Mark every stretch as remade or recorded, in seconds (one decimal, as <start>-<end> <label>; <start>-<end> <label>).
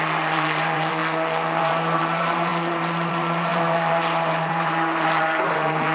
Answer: 0.0-1.0 remade; 1.0-1.6 recorded; 1.6-5.9 remade